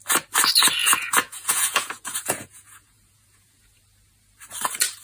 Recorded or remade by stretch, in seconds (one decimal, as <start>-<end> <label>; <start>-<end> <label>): 0.0-0.8 recorded; 0.8-3.8 remade; 3.8-5.0 recorded